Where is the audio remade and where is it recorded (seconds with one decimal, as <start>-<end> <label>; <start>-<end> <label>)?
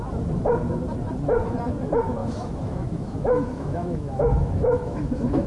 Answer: 0.0-2.2 recorded; 2.2-5.5 remade